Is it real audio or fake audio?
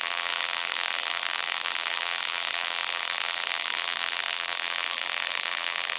fake